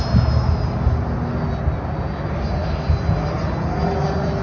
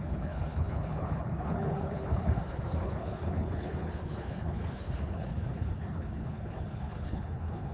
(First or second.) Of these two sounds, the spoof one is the second